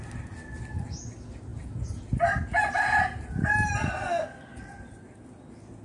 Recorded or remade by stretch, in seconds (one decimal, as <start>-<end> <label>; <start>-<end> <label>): 0.0-5.8 recorded